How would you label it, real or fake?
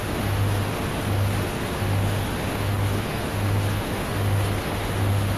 fake